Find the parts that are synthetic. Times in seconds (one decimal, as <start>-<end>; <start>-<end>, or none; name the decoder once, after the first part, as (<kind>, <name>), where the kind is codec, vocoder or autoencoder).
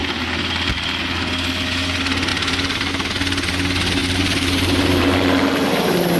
2.3-2.9 (vocoder, BigVGAN v2); 4.0-6.2